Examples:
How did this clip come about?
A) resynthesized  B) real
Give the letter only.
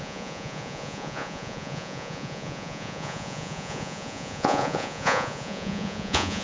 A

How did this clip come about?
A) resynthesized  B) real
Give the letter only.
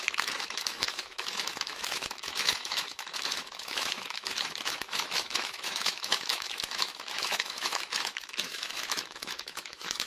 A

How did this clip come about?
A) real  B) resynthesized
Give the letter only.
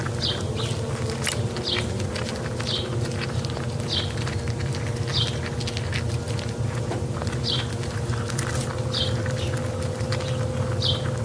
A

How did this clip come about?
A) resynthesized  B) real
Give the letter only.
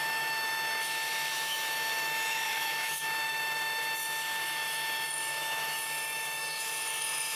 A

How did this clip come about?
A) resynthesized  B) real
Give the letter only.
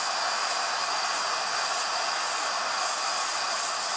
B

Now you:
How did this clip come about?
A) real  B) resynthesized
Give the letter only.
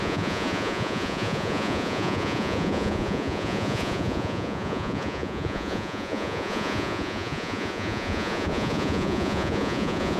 B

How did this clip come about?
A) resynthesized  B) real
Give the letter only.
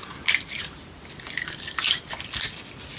B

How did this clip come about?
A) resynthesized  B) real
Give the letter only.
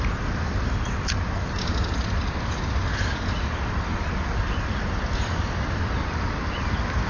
B